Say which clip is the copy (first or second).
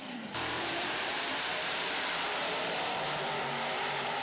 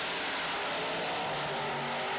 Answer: first